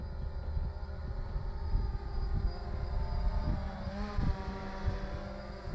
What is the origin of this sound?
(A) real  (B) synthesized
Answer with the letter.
A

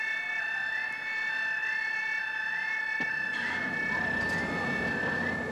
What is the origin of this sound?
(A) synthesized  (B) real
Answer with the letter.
B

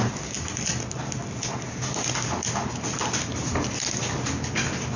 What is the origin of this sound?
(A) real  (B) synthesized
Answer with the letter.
A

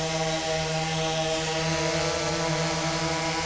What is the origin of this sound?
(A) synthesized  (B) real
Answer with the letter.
B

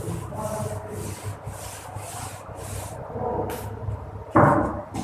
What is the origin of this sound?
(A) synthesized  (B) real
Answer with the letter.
B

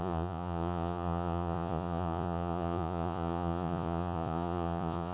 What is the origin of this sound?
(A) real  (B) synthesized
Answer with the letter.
B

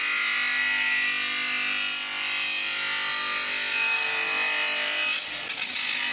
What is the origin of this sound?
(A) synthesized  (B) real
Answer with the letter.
B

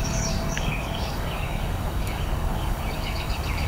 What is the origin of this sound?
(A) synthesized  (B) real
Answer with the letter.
A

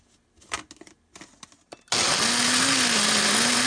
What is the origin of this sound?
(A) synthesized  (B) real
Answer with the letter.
B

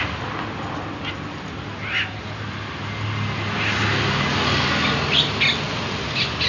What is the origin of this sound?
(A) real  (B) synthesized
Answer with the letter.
A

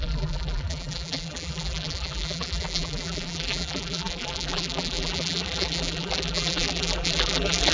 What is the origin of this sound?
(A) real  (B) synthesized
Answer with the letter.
B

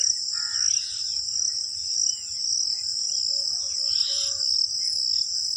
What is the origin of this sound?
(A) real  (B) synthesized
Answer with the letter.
A